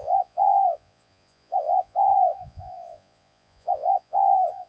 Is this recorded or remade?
remade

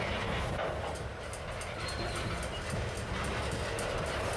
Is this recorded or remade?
recorded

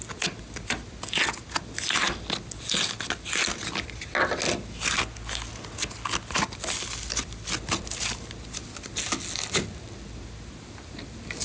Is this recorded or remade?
recorded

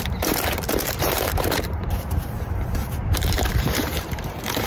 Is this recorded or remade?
remade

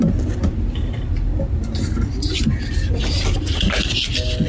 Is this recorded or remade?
recorded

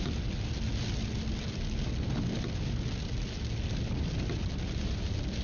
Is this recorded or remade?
recorded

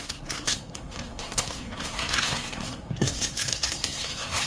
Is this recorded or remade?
remade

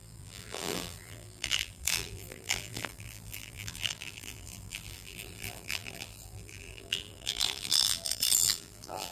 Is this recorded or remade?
remade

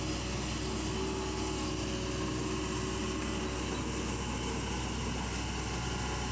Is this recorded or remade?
recorded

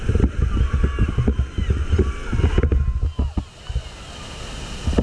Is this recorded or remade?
recorded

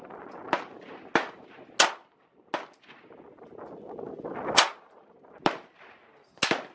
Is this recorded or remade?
recorded